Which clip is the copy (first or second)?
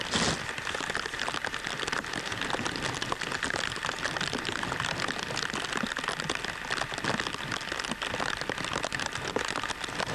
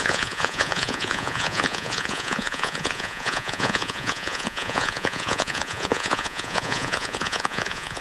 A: second